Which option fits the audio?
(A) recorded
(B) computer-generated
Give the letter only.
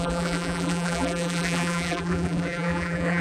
B